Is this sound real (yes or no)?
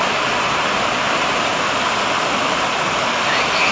yes